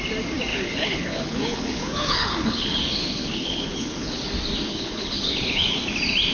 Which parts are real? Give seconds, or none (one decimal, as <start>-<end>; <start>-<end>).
0.0-0.5; 4.3-4.7; 5.8-6.3